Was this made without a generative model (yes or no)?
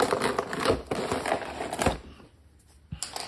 yes